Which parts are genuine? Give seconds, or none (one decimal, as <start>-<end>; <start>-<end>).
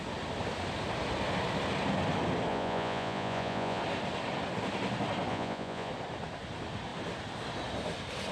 0.0-2.5; 3.8-5.3; 5.9-8.3